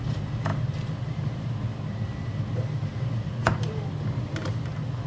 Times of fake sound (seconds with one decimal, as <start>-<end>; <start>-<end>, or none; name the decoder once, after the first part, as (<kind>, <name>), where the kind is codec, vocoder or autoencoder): none